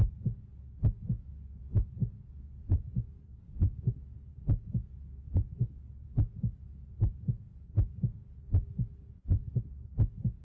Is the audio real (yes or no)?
yes